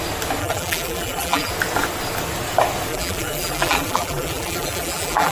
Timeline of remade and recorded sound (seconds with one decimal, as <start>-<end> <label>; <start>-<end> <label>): 0.0-0.4 recorded; 0.4-1.5 remade; 1.5-2.9 recorded; 2.9-5.3 remade